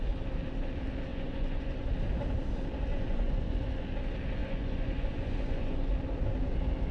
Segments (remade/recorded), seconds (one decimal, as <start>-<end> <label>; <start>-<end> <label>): 0.0-1.1 recorded; 1.1-1.9 remade; 1.9-2.9 recorded; 2.9-3.7 remade; 3.7-4.4 recorded; 4.4-5.9 remade; 5.9-6.9 recorded